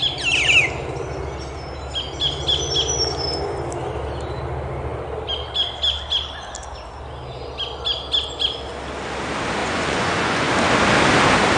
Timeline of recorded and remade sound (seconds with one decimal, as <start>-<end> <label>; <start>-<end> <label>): 0.0-9.6 recorded; 9.6-10.5 remade; 10.5-11.6 recorded